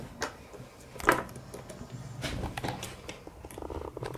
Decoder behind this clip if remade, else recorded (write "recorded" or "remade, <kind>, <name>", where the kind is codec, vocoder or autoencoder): recorded